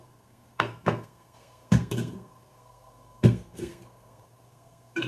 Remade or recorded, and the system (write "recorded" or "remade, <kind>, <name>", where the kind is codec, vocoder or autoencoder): remade, codec, SNAC